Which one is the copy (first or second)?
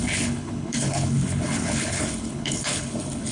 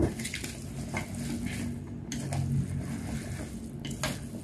first